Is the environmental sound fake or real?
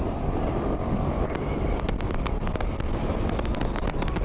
real